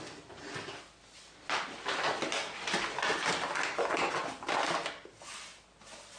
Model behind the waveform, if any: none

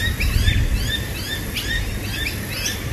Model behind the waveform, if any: none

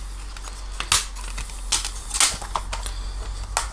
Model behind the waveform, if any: none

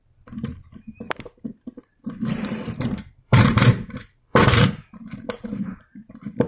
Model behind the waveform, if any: vocoder, BigVGAN v2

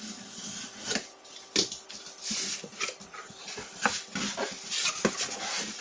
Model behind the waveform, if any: none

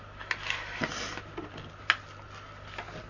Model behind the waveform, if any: none